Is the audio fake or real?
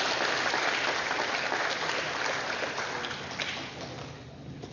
real